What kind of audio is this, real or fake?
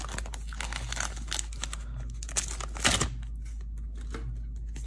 real